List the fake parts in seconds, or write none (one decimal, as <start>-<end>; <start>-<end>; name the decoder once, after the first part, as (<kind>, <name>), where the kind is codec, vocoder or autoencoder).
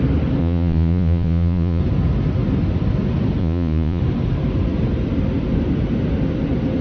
0.4-1.8 (vocoder, Vocos); 3.4-4.0